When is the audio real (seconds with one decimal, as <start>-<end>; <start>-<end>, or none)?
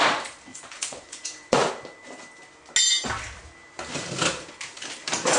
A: 0.0-0.5; 1.7-5.4